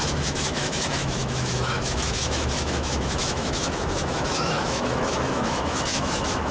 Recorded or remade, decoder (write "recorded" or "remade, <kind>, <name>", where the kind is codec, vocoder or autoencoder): remade, autoencoder, DAC-VAE